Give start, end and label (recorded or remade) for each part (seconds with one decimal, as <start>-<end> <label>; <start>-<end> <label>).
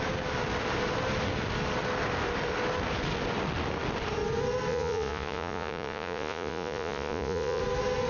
0.0-4.7 recorded; 4.7-7.6 remade; 7.6-8.1 recorded